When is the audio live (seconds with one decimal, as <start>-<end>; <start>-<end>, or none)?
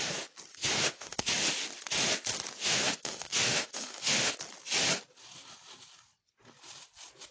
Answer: 0.0-0.5; 1.3-2.6; 4.3-7.3